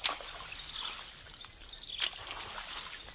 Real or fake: real